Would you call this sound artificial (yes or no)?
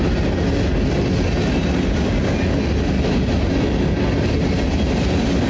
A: no